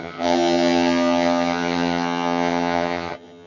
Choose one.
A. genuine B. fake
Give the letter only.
B